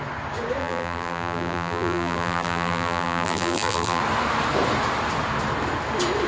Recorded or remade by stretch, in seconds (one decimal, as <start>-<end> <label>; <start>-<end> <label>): 0.0-0.6 recorded; 0.6-4.0 remade; 4.0-6.3 recorded